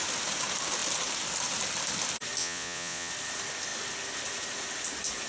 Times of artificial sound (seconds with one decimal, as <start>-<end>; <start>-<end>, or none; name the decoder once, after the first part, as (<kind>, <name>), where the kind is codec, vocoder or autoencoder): 2.4-3.1 (vocoder, Vocos)

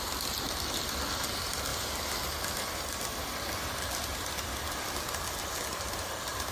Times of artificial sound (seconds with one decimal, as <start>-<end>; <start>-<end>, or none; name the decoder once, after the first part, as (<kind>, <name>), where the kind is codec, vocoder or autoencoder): none

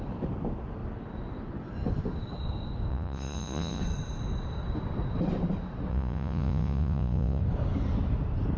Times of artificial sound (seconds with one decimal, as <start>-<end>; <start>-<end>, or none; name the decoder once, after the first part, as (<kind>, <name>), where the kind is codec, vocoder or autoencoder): 2.9-3.8 (vocoder, Vocos); 5.9-7.4

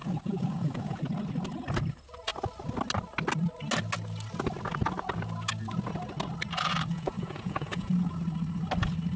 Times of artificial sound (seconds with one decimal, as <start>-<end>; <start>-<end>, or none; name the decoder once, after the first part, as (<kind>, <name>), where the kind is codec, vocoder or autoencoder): 0.0-1.0 (vocoder, Vocos); 6.9-7.9

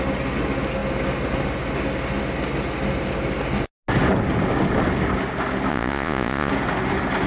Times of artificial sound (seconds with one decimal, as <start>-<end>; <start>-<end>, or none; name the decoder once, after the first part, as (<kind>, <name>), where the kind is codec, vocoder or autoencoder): 5.7-6.5 (vocoder, Vocos)

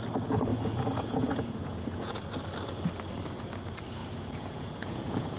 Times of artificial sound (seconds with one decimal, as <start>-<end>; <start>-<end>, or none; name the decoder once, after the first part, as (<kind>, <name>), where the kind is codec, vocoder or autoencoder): 0.5-2.2 (vocoder, Vocos); 4.0-5.4

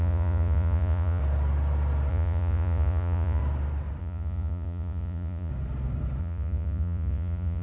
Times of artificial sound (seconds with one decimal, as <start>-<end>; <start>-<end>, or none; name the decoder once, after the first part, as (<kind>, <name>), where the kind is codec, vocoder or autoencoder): 0.0-1.2 (vocoder, Vocos); 2.1-3.4; 4.0-5.5; 6.2-7.6

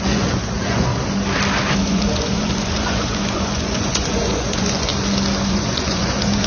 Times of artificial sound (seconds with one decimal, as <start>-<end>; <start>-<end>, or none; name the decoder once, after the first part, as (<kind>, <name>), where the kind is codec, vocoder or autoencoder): 0.0-0.9 (vocoder, Vocos); 1.8-4.9; 5.5-6.5